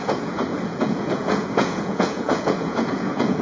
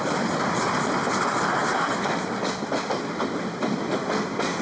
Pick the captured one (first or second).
second